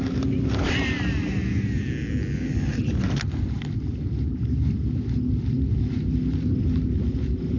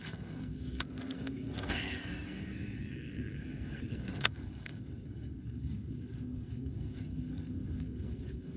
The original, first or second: first